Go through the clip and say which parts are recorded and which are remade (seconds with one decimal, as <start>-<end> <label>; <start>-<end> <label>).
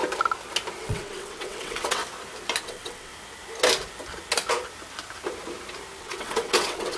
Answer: 0.0-0.8 recorded; 0.8-2.0 remade; 2.0-2.6 recorded; 2.6-3.1 remade; 3.1-6.0 recorded; 6.0-7.0 remade